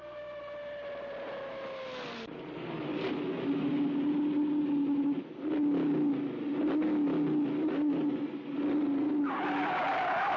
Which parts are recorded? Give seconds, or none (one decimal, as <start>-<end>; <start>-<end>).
0.0-10.4